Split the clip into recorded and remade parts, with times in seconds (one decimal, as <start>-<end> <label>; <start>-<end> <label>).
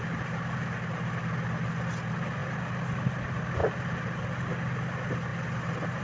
0.0-2.4 recorded; 2.4-3.2 remade; 3.2-3.6 recorded; 3.6-4.5 remade; 4.5-6.0 recorded